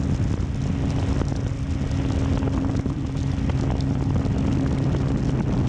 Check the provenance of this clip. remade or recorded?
recorded